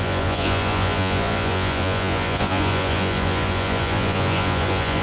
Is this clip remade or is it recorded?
remade